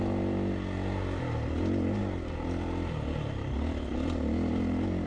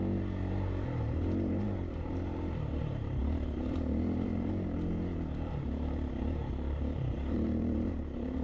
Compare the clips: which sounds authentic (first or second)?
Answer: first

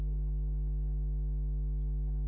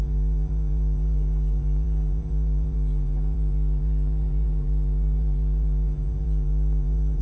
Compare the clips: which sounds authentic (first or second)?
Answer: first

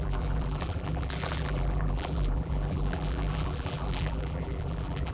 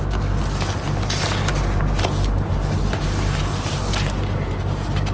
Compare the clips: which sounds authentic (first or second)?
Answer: second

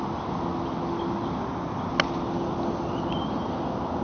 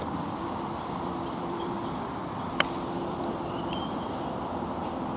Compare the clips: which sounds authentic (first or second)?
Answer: first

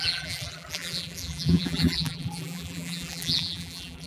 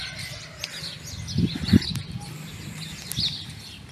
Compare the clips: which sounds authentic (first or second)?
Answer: second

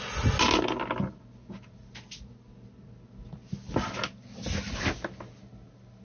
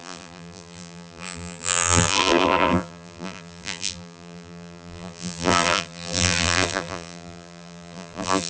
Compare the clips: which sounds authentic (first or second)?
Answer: first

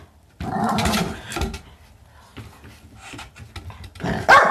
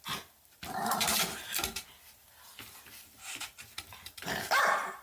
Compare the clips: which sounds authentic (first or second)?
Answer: first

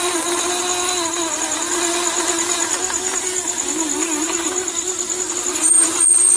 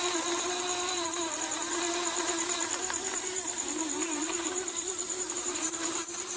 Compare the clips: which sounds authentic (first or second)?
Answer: first